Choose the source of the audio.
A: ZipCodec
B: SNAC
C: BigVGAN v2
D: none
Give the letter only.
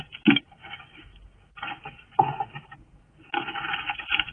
D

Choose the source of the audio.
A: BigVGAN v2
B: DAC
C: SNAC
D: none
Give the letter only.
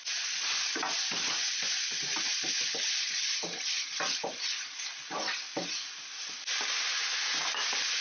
D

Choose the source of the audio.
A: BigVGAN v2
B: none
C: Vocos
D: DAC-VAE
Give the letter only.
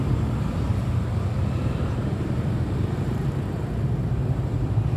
A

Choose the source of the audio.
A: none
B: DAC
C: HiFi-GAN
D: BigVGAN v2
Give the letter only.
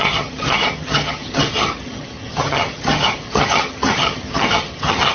C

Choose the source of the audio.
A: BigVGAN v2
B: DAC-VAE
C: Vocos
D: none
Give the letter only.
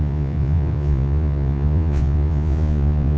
C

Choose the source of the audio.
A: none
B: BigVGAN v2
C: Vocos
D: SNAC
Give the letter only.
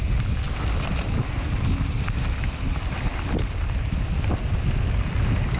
A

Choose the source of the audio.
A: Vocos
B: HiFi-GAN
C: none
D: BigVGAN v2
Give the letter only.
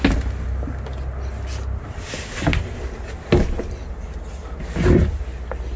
C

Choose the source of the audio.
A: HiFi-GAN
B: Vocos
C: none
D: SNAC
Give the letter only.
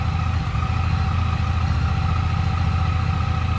C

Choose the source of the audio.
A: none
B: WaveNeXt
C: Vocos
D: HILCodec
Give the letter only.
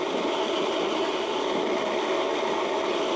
A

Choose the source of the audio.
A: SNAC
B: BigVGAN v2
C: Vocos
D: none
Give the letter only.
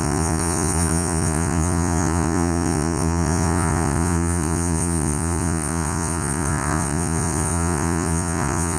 C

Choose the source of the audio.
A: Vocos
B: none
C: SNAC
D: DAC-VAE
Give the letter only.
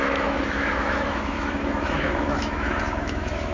D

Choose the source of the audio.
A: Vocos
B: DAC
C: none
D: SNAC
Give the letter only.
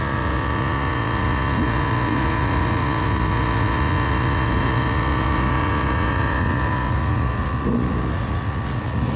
A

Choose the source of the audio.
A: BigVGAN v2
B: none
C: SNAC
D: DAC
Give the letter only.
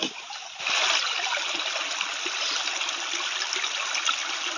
B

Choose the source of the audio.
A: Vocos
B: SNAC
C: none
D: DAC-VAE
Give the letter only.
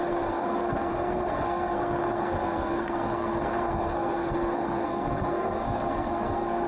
B